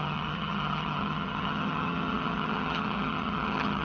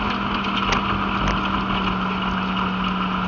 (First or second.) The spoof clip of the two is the first